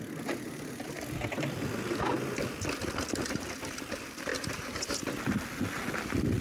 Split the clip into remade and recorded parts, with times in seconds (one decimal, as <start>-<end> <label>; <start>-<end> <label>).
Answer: 0.0-4.3 recorded; 4.3-4.9 remade; 4.9-6.4 recorded